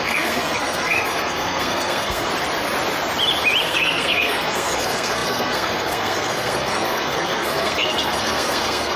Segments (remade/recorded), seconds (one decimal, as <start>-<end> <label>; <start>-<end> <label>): 0.0-2.3 remade; 2.3-3.6 recorded; 3.6-9.0 remade